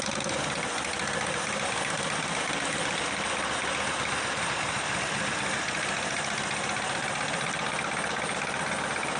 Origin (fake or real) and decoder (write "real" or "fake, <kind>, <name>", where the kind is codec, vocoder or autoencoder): real